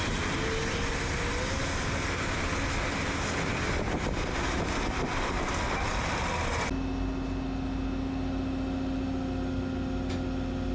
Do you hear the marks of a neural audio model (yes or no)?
no